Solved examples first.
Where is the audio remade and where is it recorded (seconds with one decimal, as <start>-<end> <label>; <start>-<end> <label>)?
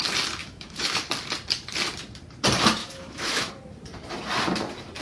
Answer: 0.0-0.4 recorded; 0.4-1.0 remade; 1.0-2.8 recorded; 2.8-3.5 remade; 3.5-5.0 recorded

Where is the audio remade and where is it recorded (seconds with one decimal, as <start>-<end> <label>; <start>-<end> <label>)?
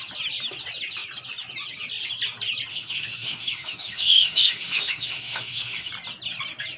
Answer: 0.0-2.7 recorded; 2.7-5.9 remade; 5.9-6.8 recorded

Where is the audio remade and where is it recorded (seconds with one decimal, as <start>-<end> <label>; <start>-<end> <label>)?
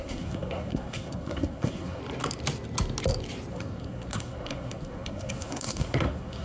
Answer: 0.0-2.0 remade; 2.0-3.5 recorded; 3.5-6.4 remade